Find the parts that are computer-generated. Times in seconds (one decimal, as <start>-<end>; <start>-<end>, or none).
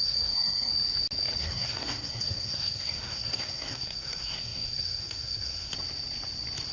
0.0-0.7; 1.4-5.7